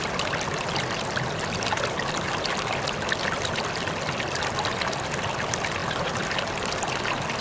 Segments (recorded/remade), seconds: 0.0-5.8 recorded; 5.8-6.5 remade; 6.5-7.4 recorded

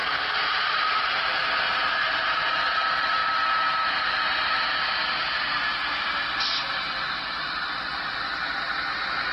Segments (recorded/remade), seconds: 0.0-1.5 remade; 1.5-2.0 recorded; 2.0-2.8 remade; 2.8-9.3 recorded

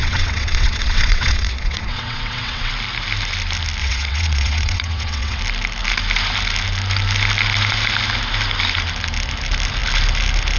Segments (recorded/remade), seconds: 0.0-2.7 remade; 2.7-3.8 recorded; 3.8-5.4 remade; 5.4-10.6 recorded

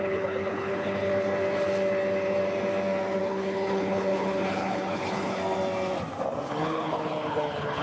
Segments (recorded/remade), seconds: 0.0-1.1 remade; 1.1-3.2 recorded; 3.2-5.4 remade; 5.4-6.5 recorded; 6.5-7.8 remade

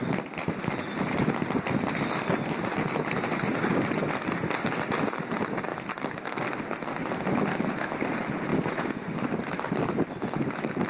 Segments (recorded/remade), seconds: 0.0-8.5 recorded; 8.5-9.8 remade; 9.8-10.9 recorded

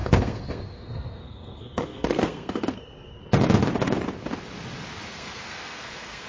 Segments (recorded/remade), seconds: 0.0-3.2 remade; 3.2-5.1 recorded; 5.1-6.3 remade

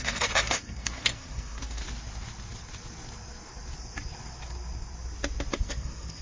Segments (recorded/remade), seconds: 0.0-1.8 remade; 1.8-5.5 recorded; 5.5-6.2 remade

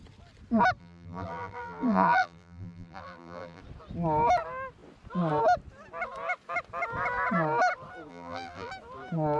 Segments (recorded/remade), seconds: 0.0-0.8 recorded; 0.8-3.6 remade; 3.6-8.1 recorded; 8.1-8.7 remade; 8.7-9.4 recorded